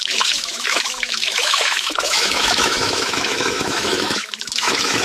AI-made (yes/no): yes